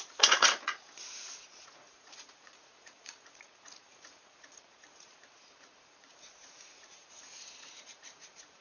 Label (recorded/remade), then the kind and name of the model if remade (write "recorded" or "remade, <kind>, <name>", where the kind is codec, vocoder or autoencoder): remade, vocoder, Vocos